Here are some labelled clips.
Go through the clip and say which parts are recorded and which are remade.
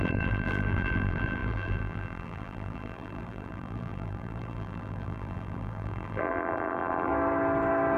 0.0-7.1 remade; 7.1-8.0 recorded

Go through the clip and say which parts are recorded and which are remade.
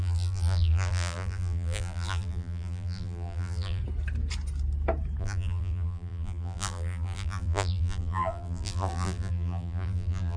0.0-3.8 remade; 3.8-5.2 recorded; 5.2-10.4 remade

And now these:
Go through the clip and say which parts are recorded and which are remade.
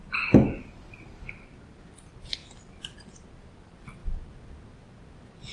0.0-0.8 recorded; 0.8-2.4 remade; 2.4-3.3 recorded; 3.3-4.0 remade; 4.0-5.5 recorded